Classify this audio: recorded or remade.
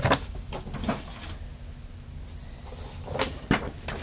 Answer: recorded